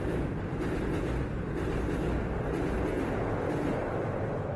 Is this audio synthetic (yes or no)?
no